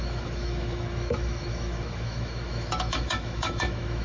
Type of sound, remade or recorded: remade